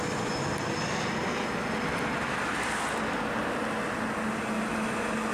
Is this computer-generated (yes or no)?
no